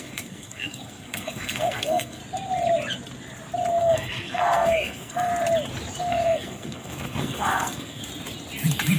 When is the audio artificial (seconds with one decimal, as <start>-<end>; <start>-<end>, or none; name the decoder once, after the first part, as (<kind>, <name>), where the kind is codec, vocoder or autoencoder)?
0.0-2.2 (codec, SNAC); 3.8-5.3; 6.0-8.0